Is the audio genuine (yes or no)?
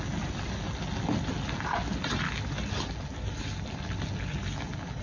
yes